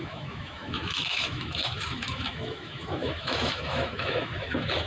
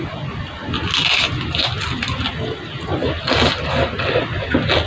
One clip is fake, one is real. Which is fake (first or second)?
first